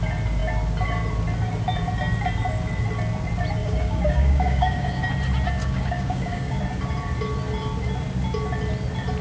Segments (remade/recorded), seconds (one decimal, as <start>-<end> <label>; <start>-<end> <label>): 0.0-3.6 recorded; 3.6-5.0 remade; 5.0-5.6 recorded; 5.6-6.6 remade; 6.6-9.2 recorded